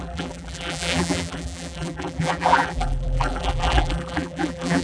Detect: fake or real fake